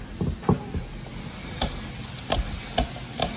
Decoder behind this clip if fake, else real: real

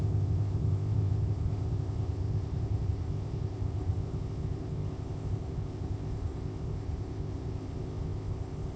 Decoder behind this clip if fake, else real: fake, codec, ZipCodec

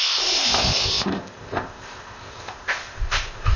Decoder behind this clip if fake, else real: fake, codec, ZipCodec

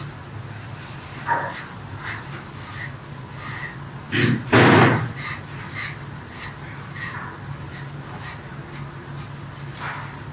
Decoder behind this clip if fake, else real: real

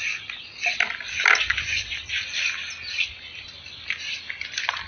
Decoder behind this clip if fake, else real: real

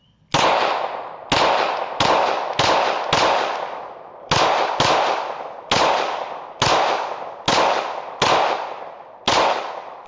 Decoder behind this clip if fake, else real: real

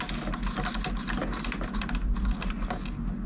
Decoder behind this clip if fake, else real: real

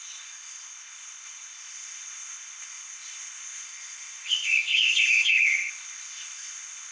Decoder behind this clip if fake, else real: fake, codec, ZipCodec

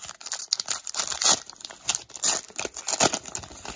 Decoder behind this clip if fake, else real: real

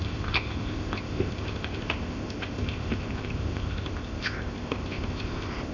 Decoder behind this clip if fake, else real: fake, codec, ZipCodec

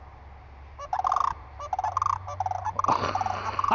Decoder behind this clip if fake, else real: real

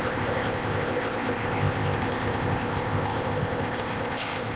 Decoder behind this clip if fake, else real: fake, codec, ZipCodec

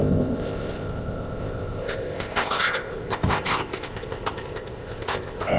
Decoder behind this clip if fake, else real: fake, codec, ZipCodec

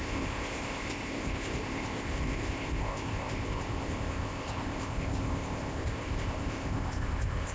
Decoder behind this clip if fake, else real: fake, codec, ZipCodec